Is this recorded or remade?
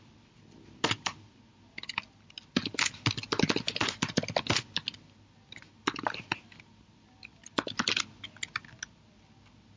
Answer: recorded